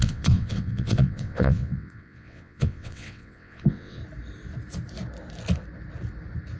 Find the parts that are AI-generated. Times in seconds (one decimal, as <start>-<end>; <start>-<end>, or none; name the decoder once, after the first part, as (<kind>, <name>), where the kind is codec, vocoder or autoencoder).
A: 0.0-4.0 (vocoder, WaveNeXt)